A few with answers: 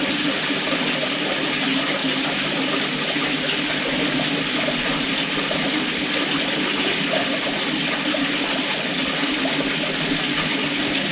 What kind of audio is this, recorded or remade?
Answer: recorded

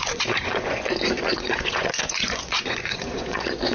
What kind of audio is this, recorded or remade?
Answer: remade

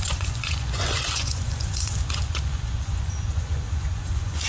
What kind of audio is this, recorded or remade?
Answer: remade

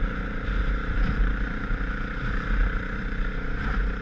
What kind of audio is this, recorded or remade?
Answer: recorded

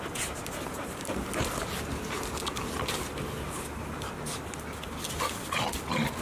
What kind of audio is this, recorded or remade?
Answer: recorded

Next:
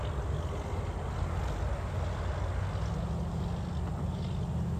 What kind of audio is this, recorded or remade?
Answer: recorded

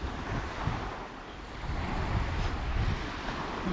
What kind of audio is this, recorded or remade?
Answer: recorded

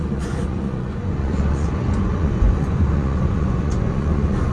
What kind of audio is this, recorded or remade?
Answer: remade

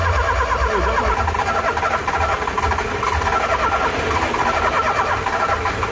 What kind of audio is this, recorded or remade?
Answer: recorded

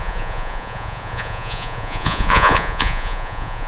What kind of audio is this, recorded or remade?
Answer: remade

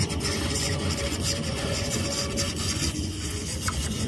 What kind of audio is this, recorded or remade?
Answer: remade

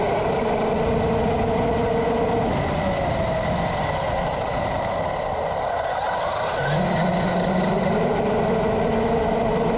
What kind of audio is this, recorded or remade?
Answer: recorded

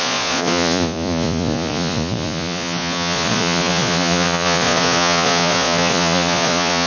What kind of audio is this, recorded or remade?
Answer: remade